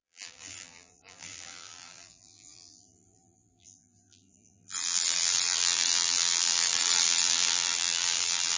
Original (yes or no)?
no